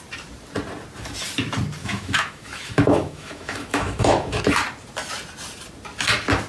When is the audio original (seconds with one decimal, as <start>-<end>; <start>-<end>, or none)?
0.0-1.8; 4.4-6.5